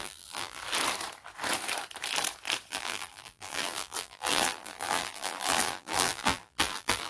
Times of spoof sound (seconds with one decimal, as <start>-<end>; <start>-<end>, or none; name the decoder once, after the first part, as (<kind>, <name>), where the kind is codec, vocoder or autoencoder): 0.0-0.6 (vocoder, BigVGAN v2); 2.7-7.1